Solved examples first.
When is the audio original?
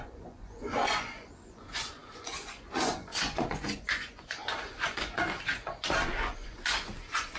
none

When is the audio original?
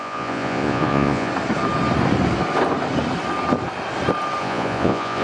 1.3-4.4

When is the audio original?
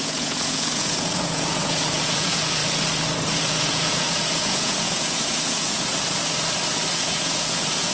2.6-3.4; 5.9-6.9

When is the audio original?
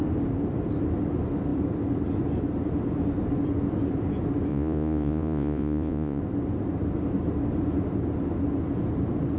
0.0-4.5; 6.2-9.4